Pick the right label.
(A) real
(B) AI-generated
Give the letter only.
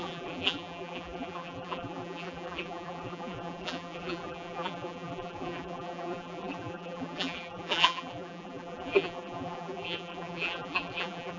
B